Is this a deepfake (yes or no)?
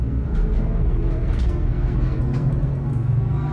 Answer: yes